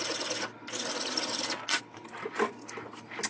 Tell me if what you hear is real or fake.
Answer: real